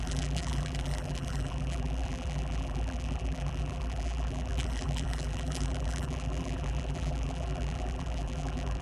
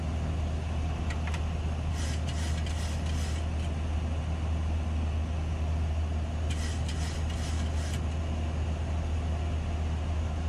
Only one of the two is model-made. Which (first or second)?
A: first